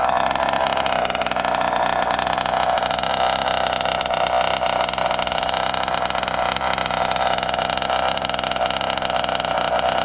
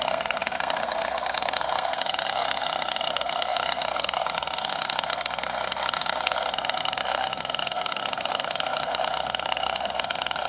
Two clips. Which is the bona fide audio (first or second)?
first